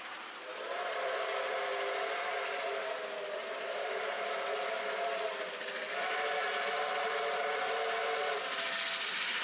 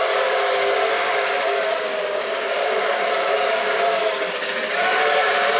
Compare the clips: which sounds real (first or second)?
first